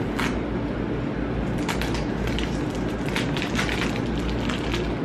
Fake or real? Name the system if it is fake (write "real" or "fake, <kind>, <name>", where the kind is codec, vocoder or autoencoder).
real